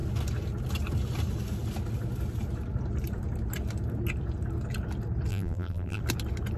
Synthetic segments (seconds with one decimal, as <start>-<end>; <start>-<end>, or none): 5.3-6.0